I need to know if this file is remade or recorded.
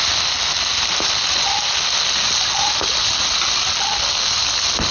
recorded